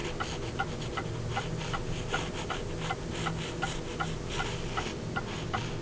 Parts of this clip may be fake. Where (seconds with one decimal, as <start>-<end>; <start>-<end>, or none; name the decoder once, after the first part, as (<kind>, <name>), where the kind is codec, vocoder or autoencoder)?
none